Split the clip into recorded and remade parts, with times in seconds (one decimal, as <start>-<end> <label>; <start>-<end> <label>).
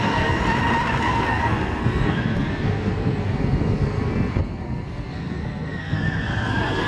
0.0-0.4 remade; 0.4-1.0 recorded; 1.0-6.9 remade